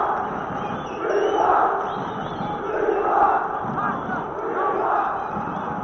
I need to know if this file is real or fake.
real